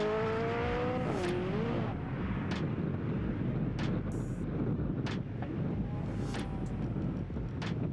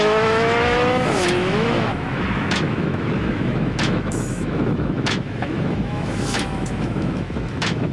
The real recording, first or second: first